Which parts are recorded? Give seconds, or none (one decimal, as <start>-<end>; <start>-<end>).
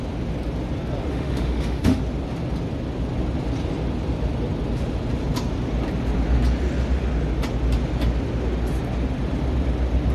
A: 0.0-1.1; 2.0-10.1